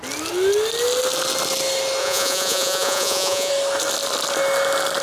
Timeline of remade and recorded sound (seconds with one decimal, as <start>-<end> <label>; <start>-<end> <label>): 0.0-2.0 recorded; 2.0-3.5 remade; 3.5-5.0 recorded